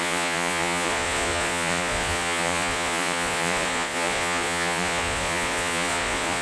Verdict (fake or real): fake